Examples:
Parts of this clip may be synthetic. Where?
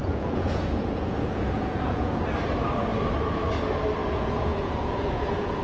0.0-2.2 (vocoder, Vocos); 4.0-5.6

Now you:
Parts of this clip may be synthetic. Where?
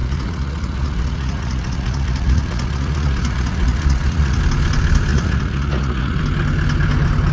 0.0-4.4 (vocoder, Vocos); 5.1-6.2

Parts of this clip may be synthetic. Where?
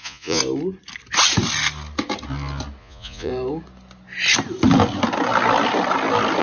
0.0-0.4 (vocoder, Vocos); 2.8-3.3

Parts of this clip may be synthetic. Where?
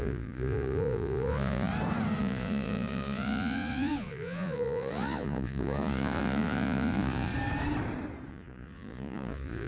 0.0-1.7 (vocoder, Vocos); 2.2-7.3; 8.3-9.7